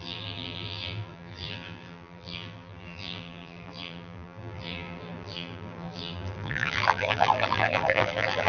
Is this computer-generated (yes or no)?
yes